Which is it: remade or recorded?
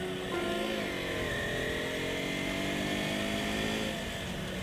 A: recorded